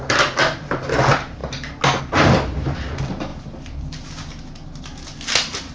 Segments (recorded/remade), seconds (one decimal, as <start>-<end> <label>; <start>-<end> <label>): 0.0-5.7 recorded